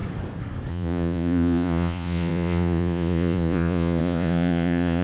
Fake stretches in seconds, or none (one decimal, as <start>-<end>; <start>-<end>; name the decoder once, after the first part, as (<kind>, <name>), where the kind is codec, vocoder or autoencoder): 0.7-5.0 (vocoder, Vocos)